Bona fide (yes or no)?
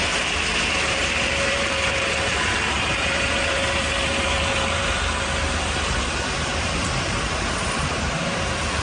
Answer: no